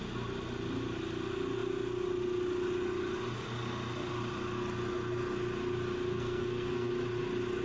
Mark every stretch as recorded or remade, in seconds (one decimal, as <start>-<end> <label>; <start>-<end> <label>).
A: 0.0-6.1 recorded; 6.1-6.9 remade; 6.9-7.6 recorded